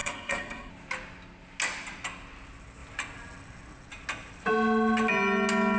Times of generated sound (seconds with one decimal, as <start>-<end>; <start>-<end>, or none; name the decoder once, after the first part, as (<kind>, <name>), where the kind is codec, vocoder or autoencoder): 0.0-0.7 (codec, SNAC)